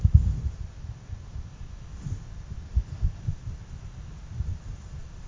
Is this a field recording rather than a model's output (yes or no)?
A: yes